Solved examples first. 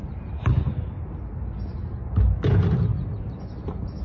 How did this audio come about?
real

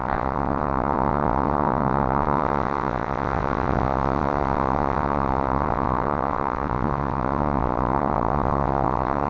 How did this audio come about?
fake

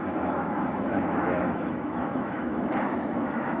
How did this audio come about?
fake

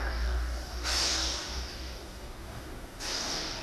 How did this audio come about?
fake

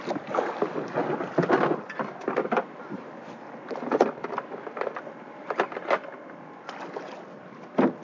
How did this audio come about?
real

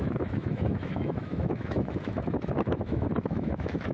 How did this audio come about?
fake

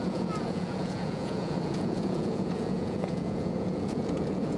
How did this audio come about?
fake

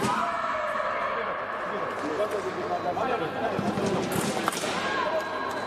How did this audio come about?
real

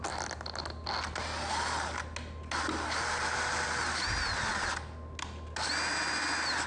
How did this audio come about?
real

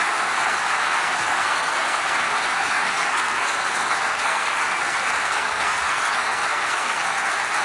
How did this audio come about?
fake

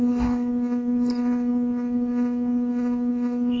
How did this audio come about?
real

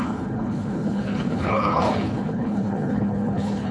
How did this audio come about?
fake